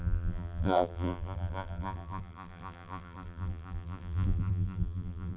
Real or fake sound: fake